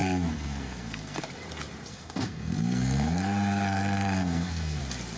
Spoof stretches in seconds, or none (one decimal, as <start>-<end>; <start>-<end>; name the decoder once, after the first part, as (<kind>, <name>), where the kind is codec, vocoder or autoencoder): 0.0-1.2 (codec, SNAC); 1.9-4.8